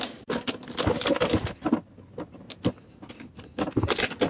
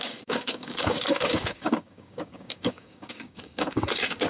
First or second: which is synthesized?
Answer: second